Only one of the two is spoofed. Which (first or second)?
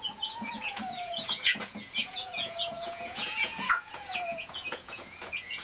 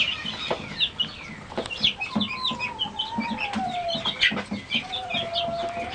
first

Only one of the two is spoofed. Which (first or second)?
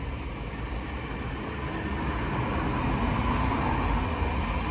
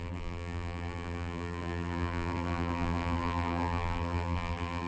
second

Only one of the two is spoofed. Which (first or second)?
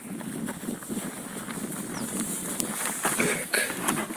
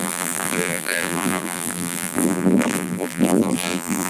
second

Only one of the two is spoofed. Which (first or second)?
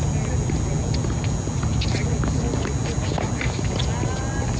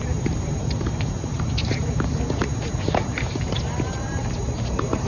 second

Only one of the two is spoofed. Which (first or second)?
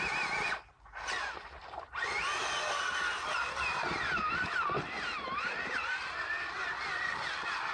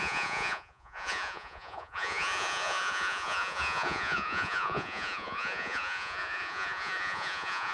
second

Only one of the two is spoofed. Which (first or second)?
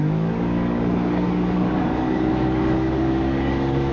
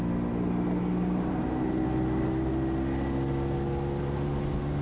first